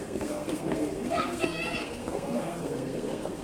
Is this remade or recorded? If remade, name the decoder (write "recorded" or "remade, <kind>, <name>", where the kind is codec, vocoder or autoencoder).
remade, codec, SNAC